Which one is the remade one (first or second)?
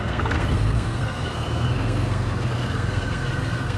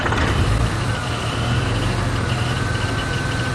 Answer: first